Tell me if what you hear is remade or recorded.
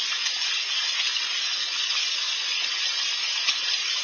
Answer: recorded